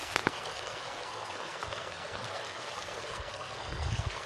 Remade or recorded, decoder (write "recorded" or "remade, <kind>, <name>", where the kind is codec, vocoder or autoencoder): remade, codec, SNAC